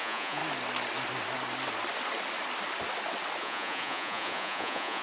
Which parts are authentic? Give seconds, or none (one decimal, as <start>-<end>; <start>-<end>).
0.4-3.4